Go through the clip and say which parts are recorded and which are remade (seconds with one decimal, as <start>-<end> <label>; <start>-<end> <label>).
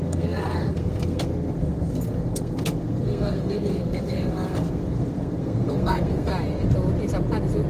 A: 0.0-6.3 remade; 6.3-7.7 recorded